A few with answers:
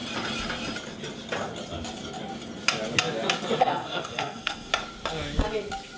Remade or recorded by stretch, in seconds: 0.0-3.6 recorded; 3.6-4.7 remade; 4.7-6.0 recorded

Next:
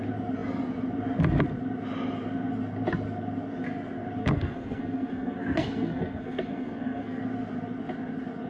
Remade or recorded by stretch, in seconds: 0.0-4.2 recorded; 4.2-7.2 remade; 7.2-8.5 recorded

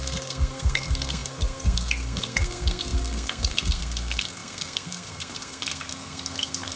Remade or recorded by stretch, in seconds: 0.0-6.8 remade

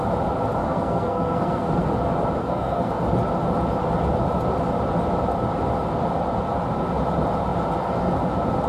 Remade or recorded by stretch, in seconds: 0.0-0.6 recorded; 0.6-1.9 remade; 1.9-2.4 recorded; 2.4-2.9 remade; 2.9-8.7 recorded

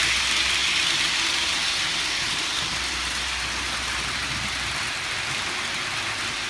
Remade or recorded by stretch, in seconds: 0.0-6.5 recorded